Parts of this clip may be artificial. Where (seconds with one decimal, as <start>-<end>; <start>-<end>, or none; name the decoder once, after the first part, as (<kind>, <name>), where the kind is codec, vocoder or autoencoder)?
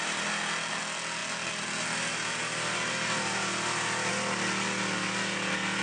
none